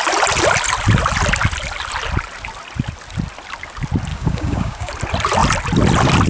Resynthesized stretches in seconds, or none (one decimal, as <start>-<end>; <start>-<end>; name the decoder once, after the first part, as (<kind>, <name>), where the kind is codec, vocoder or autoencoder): 4.1-4.9 (codec, DAC)